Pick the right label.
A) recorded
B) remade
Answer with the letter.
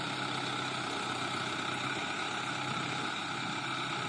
A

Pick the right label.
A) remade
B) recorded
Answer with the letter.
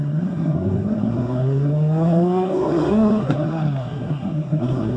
A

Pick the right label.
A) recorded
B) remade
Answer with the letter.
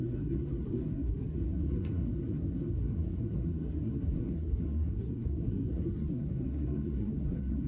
B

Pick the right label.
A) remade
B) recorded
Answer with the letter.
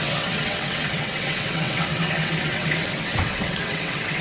A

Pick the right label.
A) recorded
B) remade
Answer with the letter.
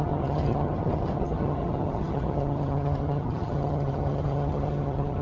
B